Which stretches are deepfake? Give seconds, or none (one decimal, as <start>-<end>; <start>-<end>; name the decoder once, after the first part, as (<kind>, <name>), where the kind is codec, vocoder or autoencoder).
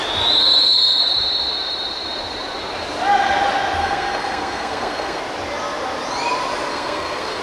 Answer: 0.4-1.0 (codec, SNAC); 3.8-5.2; 6.7-7.4